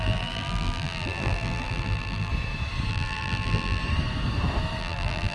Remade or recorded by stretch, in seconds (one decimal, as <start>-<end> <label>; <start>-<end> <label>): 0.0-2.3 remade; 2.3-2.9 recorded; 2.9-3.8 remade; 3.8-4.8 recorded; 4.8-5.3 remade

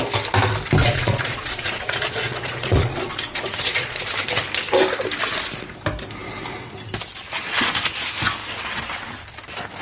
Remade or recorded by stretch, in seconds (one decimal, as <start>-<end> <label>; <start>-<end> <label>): 0.0-0.8 recorded; 0.8-4.0 remade; 4.0-9.8 recorded

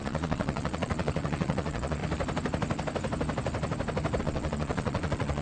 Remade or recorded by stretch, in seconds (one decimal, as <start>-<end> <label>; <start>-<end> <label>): 0.0-2.0 remade; 2.0-4.2 recorded; 4.2-5.4 remade

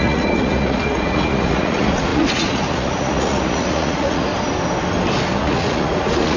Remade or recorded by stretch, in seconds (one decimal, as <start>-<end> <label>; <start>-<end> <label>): 0.0-4.3 remade; 4.3-5.4 recorded; 5.4-6.4 remade

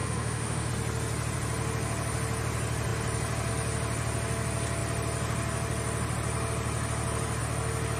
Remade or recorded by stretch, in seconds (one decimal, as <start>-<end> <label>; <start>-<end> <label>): 0.0-0.7 remade; 0.7-8.0 recorded

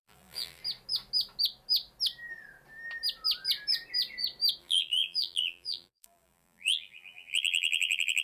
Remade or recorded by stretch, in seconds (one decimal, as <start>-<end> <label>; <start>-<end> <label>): 0.0-0.6 remade; 0.6-4.6 recorded; 4.6-8.2 remade

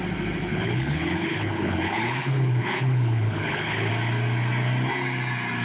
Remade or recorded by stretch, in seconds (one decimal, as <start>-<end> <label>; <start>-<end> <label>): 0.0-0.5 recorded; 0.5-3.9 remade; 3.9-5.6 recorded

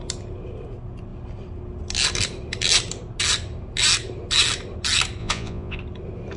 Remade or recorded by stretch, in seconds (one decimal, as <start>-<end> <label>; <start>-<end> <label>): 0.0-5.2 recorded; 5.2-5.8 remade; 5.8-6.4 recorded